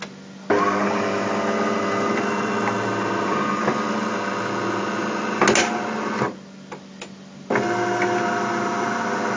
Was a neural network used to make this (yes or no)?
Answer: no